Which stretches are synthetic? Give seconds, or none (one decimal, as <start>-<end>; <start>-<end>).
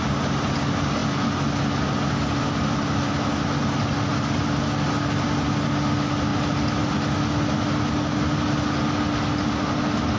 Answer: none